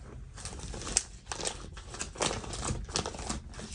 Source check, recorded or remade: recorded